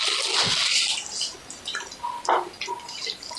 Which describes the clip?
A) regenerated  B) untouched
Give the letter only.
B